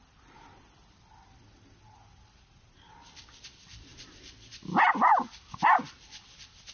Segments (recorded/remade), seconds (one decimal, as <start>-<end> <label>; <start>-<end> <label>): 0.0-6.7 recorded